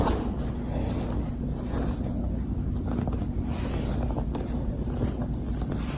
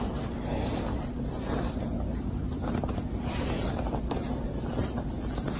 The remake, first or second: second